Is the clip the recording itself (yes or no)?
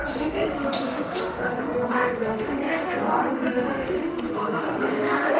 no